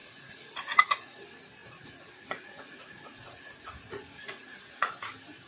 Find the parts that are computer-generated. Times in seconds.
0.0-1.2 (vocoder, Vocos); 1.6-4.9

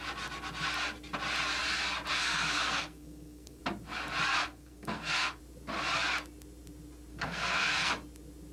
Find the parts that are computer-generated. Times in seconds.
2.1-3.6 (codec, SNAC); 4.4-5.4; 7.1-7.9